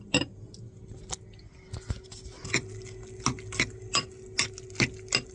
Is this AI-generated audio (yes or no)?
no